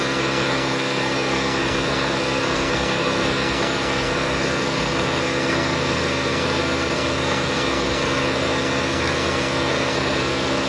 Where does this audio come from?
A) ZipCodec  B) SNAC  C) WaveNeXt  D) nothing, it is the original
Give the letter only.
B